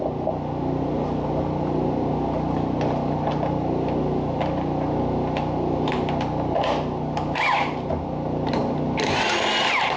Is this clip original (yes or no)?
yes